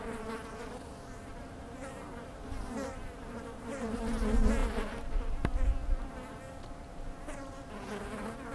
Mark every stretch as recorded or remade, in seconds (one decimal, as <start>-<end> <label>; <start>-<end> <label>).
0.0-1.3 recorded; 1.3-4.0 remade; 4.0-8.5 recorded